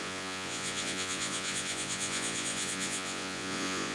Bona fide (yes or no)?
no